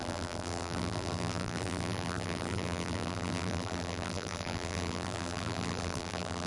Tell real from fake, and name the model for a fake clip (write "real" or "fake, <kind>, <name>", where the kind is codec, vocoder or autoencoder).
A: fake, vocoder, BigVGAN v2